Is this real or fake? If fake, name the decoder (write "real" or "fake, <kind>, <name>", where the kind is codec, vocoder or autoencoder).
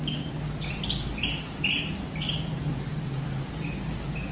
real